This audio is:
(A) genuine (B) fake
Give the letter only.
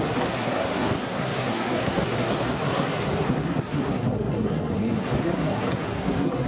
B